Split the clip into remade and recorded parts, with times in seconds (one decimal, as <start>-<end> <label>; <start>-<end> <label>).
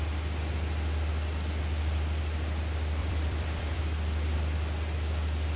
0.0-3.0 recorded; 3.0-3.8 remade; 3.8-5.6 recorded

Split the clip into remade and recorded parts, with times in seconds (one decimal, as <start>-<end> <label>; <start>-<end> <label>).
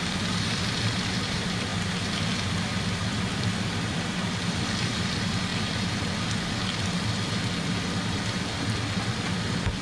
0.0-1.7 remade; 1.7-2.8 recorded; 2.8-5.5 remade; 5.5-7.6 recorded; 7.6-9.8 remade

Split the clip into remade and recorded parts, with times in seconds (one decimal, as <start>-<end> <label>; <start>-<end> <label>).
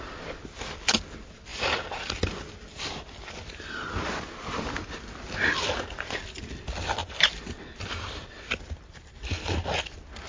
0.0-1.5 recorded; 1.5-2.0 remade; 2.0-7.0 recorded; 7.0-8.3 remade; 8.3-10.3 recorded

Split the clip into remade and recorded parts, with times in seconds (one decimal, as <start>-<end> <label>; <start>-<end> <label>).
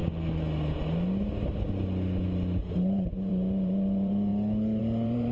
0.0-2.7 recorded; 2.7-4.3 remade; 4.3-4.8 recorded; 4.8-5.3 remade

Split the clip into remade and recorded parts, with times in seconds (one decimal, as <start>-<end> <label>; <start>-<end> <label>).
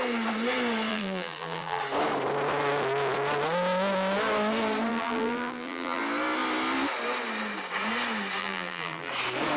0.0-0.9 recorded; 0.9-1.8 remade; 1.8-4.9 recorded; 4.9-6.0 remade; 6.0-8.4 recorded; 8.4-9.1 remade; 9.1-9.6 recorded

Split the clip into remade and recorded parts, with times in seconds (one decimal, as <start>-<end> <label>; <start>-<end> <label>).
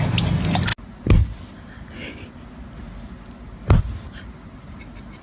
0.0-5.2 recorded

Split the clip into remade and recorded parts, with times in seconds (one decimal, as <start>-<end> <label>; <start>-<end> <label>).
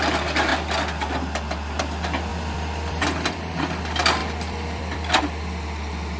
0.0-2.3 recorded; 2.3-3.8 remade; 3.8-4.2 recorded; 4.2-5.2 remade; 5.2-6.2 recorded